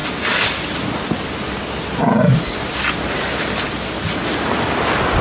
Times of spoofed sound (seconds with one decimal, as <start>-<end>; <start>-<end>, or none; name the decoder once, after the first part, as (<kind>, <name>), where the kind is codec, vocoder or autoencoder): none